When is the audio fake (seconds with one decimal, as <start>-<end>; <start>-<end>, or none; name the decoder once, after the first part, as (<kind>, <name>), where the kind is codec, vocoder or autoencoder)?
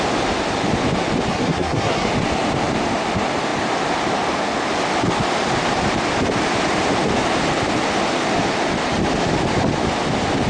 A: 1.3-2.1 (codec, SNAC)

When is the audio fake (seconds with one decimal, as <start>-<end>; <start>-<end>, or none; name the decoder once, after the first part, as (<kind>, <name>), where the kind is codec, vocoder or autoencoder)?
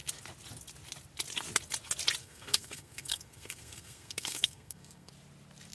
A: 2.2-5.1 (codec, SNAC)